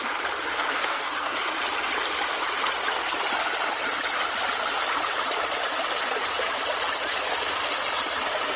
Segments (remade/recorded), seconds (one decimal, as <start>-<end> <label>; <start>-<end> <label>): 0.0-0.5 recorded; 0.5-1.4 remade; 1.4-8.6 recorded